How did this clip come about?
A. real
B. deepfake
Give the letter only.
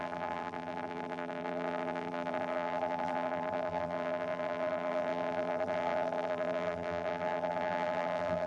B